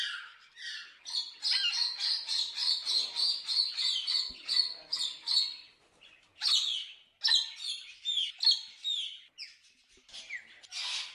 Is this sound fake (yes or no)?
no